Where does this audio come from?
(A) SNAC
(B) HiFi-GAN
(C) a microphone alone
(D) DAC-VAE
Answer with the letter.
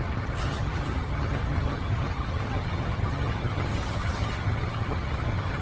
B